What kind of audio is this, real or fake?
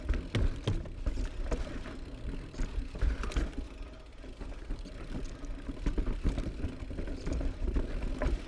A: real